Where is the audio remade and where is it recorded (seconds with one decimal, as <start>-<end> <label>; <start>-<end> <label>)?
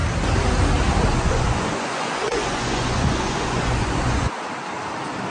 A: 0.0-1.1 recorded; 1.1-4.3 remade; 4.3-5.3 recorded